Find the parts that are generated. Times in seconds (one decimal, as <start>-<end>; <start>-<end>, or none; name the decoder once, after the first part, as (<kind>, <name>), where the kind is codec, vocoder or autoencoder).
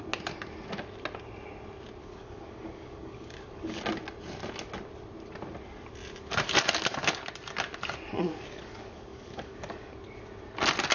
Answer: 2.0-3.8 (codec, DAC); 8.2-9.8